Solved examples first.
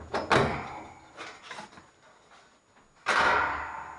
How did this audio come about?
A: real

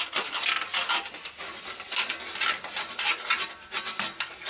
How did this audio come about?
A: real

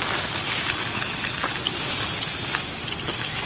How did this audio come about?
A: real